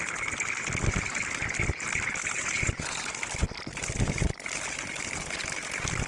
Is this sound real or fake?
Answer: real